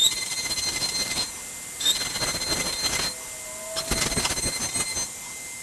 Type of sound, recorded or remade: recorded